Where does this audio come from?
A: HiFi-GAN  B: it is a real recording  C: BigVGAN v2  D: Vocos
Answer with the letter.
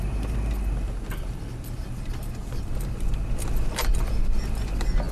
B